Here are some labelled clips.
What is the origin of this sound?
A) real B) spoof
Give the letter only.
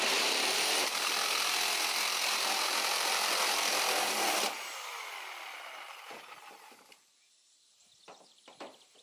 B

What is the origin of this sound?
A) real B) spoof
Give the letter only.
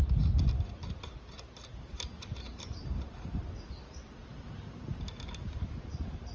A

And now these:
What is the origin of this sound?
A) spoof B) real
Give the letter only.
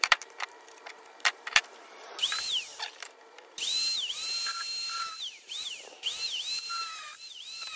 A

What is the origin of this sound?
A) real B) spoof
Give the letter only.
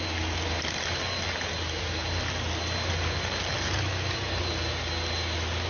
A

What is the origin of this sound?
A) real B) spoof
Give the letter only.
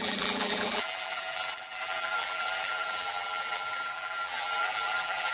B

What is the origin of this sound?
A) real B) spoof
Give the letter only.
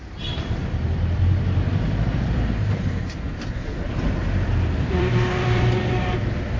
B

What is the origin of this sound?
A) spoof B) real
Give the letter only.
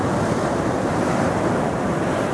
B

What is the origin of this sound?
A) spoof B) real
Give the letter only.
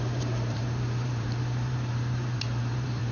A